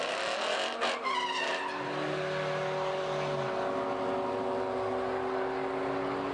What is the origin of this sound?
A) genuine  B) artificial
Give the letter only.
A